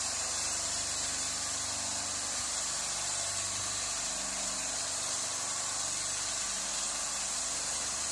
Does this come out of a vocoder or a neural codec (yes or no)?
no